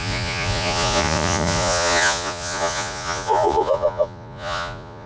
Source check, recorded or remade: remade